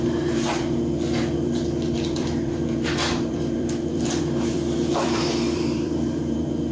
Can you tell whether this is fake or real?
fake